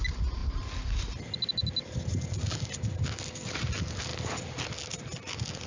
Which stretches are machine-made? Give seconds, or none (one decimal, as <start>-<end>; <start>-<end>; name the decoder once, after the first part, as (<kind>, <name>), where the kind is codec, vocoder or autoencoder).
none